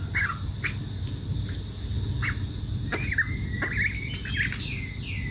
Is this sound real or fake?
real